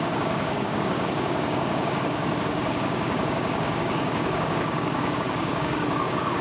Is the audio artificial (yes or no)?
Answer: yes